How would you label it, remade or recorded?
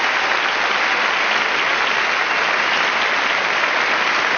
recorded